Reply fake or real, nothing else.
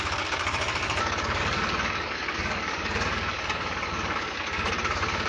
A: fake